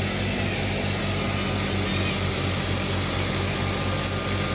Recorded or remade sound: recorded